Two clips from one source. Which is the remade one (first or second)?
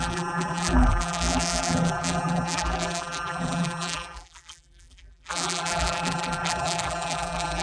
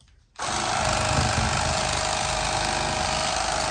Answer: first